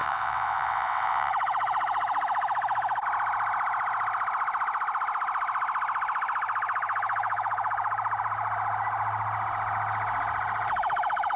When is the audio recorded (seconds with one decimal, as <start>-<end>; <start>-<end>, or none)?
1.3-11.4